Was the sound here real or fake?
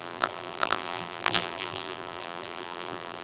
fake